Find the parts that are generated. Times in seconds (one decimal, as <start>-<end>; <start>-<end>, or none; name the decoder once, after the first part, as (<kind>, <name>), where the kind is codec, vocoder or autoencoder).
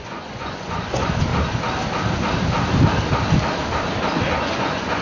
0.0-1.3 (vocoder, Vocos); 4.3-5.0